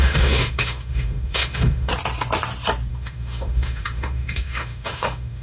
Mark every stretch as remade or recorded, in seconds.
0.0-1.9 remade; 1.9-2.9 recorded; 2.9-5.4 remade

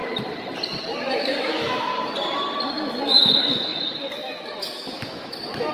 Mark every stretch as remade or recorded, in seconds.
0.0-0.9 recorded; 0.9-1.9 remade; 1.9-2.7 recorded; 2.7-5.7 remade

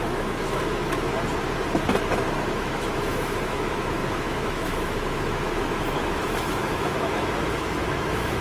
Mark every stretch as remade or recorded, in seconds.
0.0-1.1 remade; 1.1-2.4 recorded; 2.4-8.4 remade

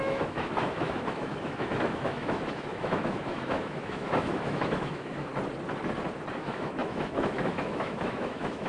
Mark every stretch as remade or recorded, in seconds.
0.0-5.3 remade; 5.3-6.3 recorded; 6.3-8.7 remade

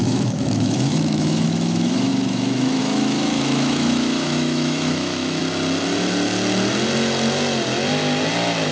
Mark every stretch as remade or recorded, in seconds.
0.0-5.4 remade; 5.4-8.7 recorded